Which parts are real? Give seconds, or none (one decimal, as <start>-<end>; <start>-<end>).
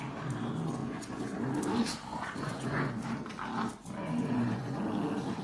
0.0-0.8; 1.4-2.1; 2.9-4.2; 4.9-5.4